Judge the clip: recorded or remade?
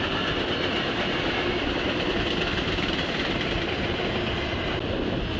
recorded